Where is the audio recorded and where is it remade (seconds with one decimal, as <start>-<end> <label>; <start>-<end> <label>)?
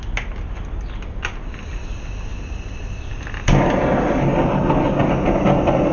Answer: 0.0-5.9 recorded